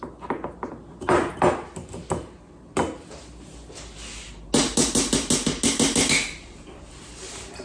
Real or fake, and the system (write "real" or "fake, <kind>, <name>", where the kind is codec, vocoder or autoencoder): real